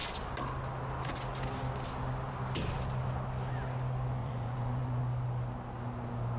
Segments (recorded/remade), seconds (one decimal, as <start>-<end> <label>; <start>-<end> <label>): 0.0-4.2 recorded; 4.2-5.0 remade; 5.0-6.4 recorded